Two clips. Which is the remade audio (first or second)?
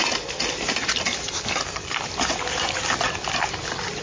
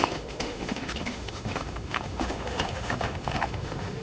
second